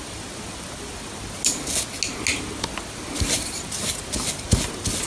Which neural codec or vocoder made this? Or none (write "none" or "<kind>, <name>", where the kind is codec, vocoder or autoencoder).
none